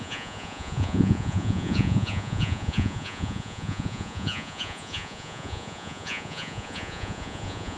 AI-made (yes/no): yes